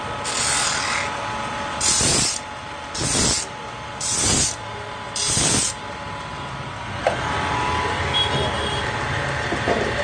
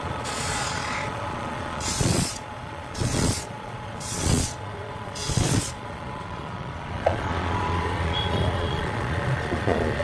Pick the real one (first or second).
first